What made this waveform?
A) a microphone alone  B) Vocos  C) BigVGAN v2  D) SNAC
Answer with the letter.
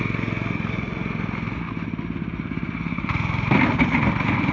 A